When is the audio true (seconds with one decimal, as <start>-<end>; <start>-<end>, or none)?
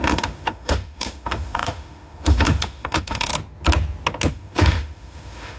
3.3-4.3